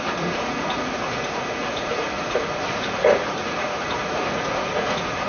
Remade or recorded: remade